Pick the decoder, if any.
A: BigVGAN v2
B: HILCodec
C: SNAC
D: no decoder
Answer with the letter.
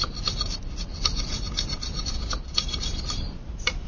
A